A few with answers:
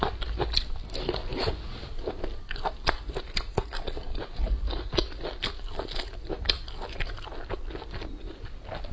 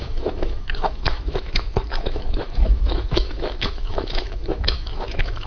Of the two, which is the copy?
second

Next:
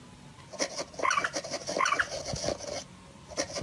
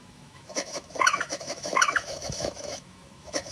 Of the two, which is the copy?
second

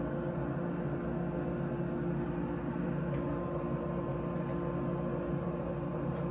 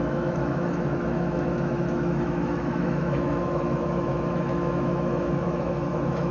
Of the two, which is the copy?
second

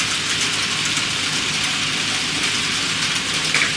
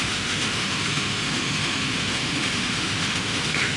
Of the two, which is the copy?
second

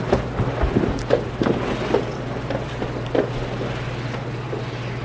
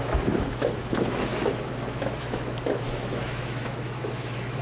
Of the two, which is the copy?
second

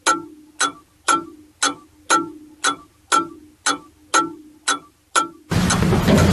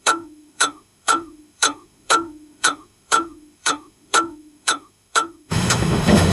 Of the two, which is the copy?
second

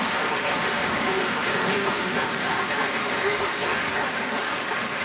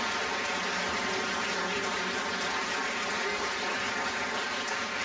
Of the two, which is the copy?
first